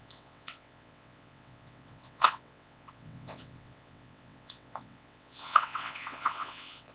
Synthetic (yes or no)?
yes